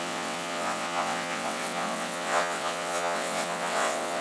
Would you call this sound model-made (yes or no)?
yes